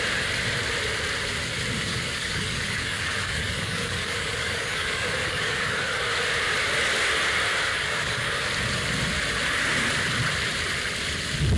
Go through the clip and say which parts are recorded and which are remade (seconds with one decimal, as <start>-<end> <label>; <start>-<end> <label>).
0.0-1.9 recorded; 1.9-6.1 remade; 6.1-7.7 recorded; 7.7-8.4 remade; 8.4-11.6 recorded